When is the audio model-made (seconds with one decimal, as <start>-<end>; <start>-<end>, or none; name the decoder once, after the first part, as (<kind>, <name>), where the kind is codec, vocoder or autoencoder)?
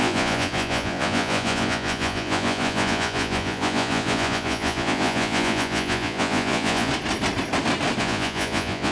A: 0.0-6.9 (vocoder, Vocos); 8.0-8.9